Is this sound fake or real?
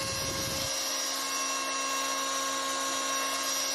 real